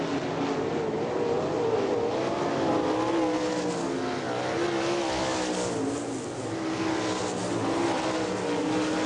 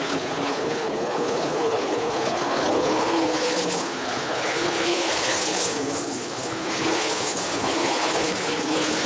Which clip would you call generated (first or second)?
second